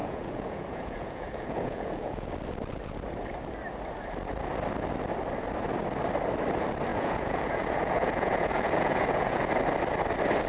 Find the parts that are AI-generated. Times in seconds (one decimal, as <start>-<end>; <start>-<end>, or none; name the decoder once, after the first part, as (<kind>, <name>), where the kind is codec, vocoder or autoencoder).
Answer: 0.0-2.3 (vocoder, Vocos); 6.9-9.5